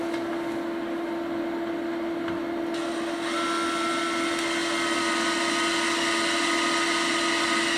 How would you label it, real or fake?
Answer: real